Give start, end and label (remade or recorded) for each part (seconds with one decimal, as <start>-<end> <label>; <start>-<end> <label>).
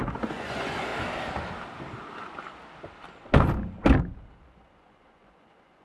0.0-0.9 remade; 0.9-4.4 recorded; 4.4-5.8 remade